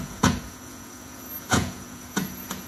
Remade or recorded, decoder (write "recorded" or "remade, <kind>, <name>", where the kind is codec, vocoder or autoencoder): remade, vocoder, Vocos